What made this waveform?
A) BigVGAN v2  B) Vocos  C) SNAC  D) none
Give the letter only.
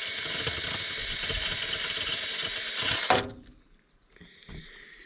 D